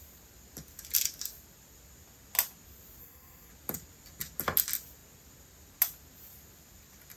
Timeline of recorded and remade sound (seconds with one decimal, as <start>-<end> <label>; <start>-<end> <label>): 0.0-3.0 recorded; 3.0-3.5 remade; 3.5-7.2 recorded

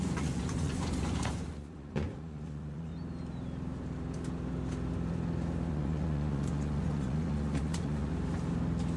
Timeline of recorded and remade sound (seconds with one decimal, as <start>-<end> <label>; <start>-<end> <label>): 0.0-2.9 remade; 2.9-5.7 recorded; 5.7-8.1 remade; 8.1-9.0 recorded

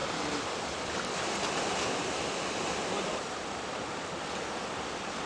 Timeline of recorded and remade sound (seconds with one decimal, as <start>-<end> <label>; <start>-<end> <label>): 0.0-5.3 recorded

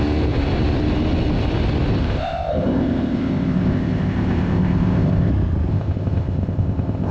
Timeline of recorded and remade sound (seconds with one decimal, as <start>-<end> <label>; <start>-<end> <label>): 0.0-2.0 recorded; 2.0-5.3 remade; 5.3-5.7 recorded; 5.7-7.1 remade